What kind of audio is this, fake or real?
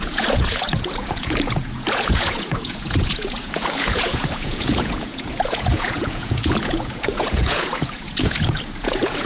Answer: fake